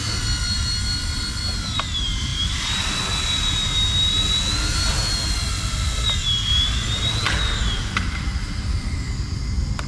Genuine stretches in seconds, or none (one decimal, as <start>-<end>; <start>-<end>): 0.0-9.9